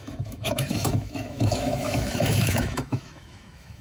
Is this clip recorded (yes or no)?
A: no